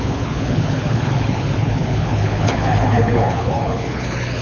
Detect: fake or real fake